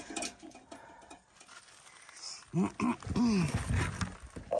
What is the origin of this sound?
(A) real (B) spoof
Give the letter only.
A